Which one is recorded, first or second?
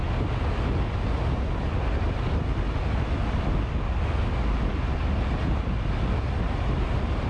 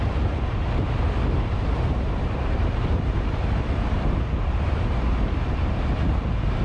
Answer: first